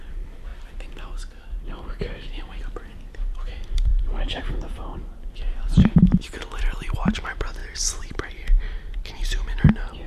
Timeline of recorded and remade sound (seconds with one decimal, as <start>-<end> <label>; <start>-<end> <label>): 0.0-0.5 remade; 0.5-2.6 recorded; 2.6-10.1 remade